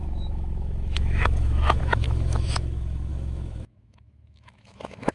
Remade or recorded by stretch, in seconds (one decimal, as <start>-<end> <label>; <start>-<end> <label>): 0.0-5.1 remade